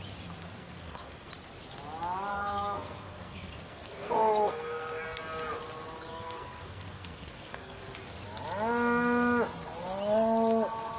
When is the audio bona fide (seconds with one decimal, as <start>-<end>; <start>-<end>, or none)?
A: 0.0-0.4; 1.3-2.3; 5.2-6.1; 7.8-11.0